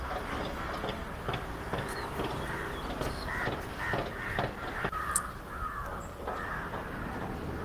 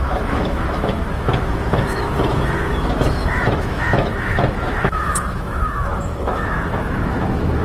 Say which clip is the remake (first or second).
second